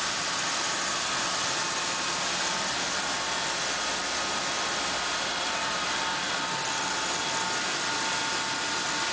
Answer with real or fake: real